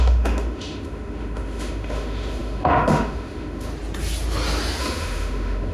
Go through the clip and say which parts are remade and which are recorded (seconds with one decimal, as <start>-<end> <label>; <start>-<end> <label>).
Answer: 0.0-3.7 remade; 3.7-4.8 recorded; 4.8-5.7 remade